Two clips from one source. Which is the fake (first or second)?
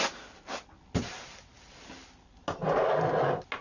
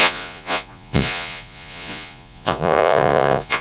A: second